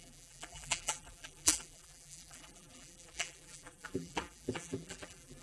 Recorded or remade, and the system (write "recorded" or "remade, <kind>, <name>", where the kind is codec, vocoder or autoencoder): remade, vocoder, BigVGAN v2